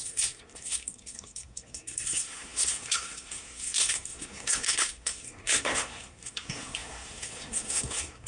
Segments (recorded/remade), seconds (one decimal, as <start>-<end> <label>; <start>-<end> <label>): 0.0-8.3 remade